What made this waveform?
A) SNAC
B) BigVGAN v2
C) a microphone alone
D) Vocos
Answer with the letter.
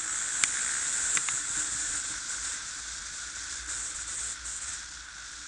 C